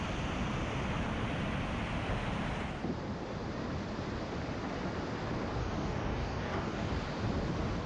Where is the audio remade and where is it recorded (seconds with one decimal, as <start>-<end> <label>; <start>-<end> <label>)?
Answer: 0.0-5.6 recorded; 5.6-6.9 remade; 6.9-7.9 recorded